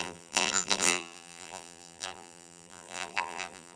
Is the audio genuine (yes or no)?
no